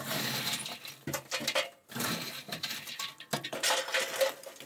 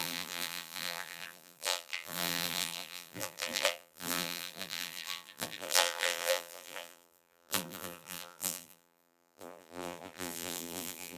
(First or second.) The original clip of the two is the first